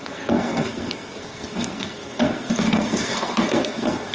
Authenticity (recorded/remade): remade